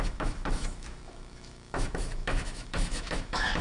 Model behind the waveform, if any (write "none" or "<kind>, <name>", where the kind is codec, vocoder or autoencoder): autoencoder, DAC-VAE